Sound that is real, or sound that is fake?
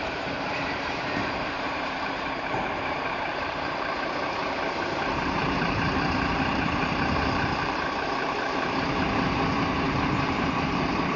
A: fake